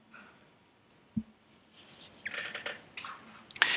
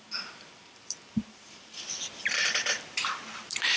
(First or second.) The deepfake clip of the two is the second